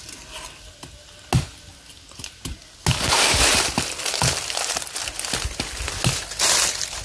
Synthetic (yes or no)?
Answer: no